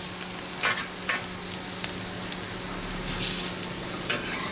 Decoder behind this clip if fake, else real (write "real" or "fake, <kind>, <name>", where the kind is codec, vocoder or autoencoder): real